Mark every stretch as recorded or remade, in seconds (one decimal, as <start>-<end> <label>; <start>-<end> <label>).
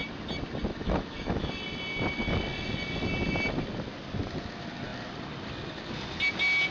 0.0-0.7 recorded; 0.7-1.5 remade; 1.5-6.7 recorded